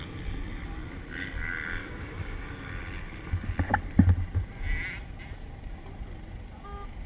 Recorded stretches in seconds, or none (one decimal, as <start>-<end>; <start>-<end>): 0.0-1.8; 2.4-7.1